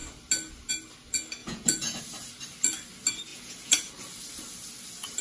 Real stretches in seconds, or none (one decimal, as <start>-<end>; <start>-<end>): 0.0-1.4; 2.0-3.3; 3.9-5.2